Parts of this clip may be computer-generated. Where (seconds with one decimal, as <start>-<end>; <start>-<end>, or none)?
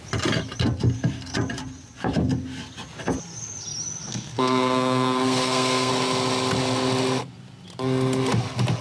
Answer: 4.1-5.9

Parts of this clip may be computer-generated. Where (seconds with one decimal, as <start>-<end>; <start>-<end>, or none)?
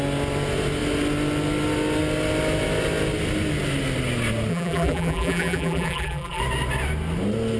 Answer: 4.5-6.4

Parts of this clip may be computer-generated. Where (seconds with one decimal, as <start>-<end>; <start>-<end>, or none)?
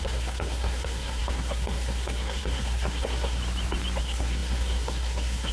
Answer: 0.0-3.4; 4.0-5.5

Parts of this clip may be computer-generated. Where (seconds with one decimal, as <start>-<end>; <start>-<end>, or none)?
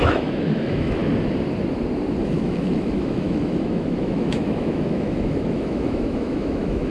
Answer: 0.0-1.0; 2.2-6.9